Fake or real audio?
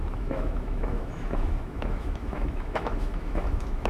fake